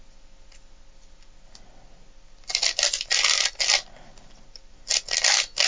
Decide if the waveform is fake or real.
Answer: real